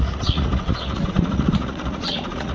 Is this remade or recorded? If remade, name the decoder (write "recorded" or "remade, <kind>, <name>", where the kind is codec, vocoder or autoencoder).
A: remade, vocoder, Vocos